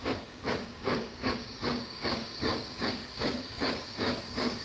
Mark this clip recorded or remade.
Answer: remade